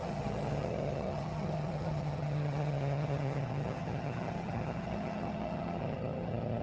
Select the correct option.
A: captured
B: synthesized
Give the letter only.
B